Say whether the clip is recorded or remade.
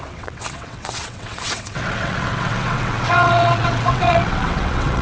remade